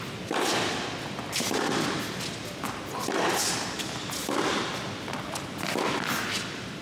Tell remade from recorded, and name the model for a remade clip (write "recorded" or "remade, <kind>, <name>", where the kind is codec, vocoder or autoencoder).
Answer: recorded